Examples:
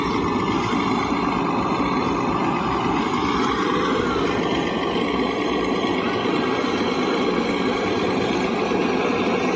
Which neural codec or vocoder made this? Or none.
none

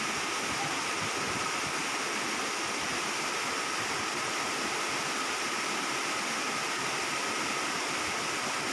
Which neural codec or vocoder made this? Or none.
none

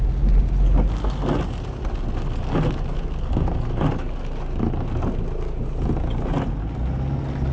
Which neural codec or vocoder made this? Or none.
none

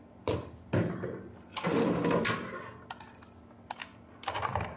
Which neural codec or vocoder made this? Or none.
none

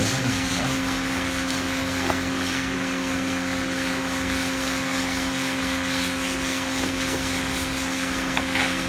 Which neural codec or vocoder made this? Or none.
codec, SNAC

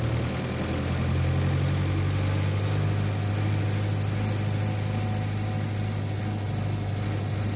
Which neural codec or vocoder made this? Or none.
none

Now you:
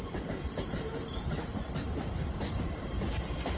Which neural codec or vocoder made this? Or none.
vocoder, BigVGAN v2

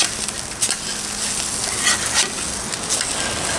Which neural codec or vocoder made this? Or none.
none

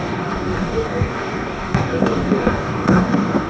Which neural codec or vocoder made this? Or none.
codec, DAC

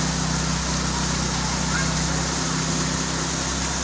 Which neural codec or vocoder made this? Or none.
none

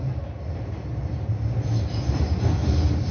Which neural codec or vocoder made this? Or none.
none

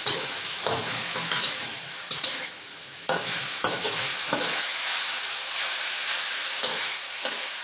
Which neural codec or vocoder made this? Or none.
autoencoder, DAC-VAE